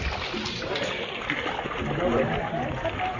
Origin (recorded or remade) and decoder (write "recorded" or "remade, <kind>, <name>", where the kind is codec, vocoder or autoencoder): recorded